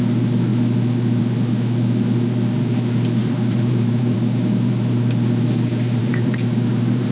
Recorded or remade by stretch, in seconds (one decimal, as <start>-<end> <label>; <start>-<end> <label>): 0.0-3.2 recorded; 3.2-4.7 remade; 4.7-6.0 recorded; 6.0-7.1 remade